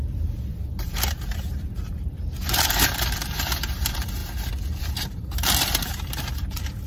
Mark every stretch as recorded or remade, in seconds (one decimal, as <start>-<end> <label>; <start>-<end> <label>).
0.0-4.2 remade; 4.2-4.8 recorded; 4.8-6.9 remade

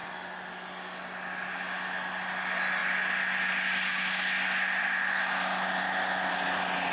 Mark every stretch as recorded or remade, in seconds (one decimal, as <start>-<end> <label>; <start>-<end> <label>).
0.0-6.9 recorded